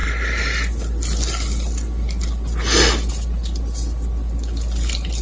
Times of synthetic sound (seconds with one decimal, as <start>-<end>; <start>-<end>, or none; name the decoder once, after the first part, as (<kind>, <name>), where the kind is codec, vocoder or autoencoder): none